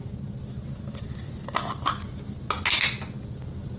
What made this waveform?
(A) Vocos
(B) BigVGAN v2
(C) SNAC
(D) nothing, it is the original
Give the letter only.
D